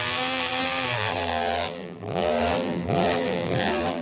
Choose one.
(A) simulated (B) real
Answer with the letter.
A